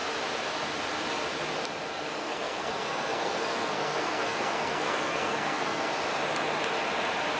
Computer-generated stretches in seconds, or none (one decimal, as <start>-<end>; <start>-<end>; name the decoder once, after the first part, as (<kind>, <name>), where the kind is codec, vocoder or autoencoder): 1.9-5.9 (codec, SNAC)